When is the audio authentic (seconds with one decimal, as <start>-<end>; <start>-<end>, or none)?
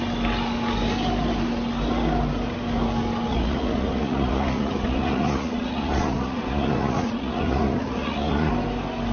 0.0-3.3; 8.5-9.1